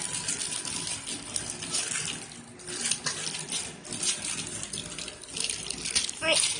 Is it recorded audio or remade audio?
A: recorded